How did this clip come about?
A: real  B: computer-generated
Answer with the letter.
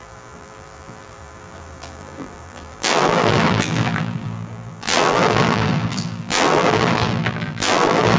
B